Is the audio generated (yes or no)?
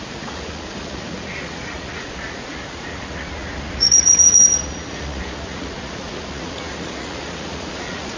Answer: yes